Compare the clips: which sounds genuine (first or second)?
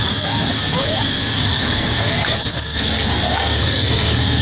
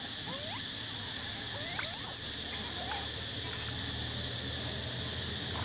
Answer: second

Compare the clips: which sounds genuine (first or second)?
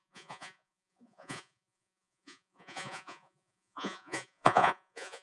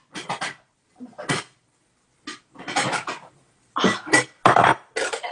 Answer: second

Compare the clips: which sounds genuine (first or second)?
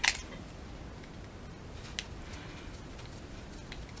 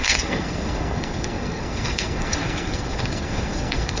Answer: first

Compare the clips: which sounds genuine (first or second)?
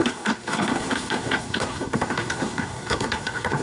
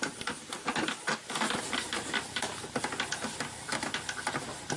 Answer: second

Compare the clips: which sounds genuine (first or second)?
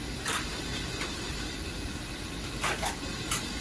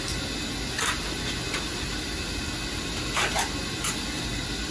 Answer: second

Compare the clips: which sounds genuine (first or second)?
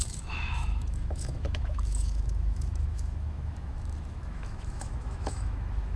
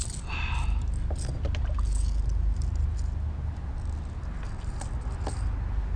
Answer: second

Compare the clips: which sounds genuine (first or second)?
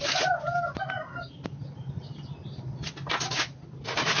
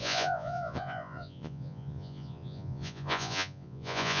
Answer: first